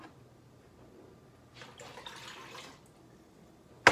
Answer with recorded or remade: recorded